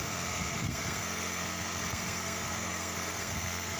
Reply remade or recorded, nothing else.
remade